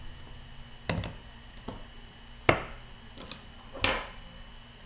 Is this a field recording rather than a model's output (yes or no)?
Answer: yes